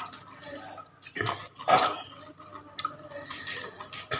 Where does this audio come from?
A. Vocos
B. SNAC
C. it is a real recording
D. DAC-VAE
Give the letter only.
C